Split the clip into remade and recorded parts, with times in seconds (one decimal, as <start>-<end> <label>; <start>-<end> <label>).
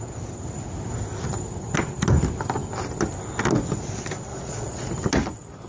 0.0-4.3 recorded; 4.3-4.9 remade; 4.9-5.7 recorded